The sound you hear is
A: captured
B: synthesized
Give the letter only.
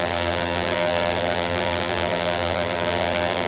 B